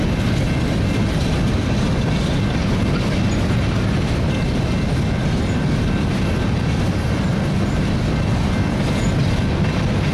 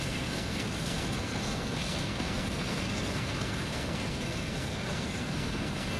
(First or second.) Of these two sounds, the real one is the first